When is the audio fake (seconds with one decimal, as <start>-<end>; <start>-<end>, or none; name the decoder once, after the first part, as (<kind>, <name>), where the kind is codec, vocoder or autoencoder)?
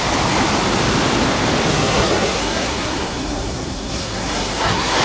1.7-5.0 (codec, SNAC)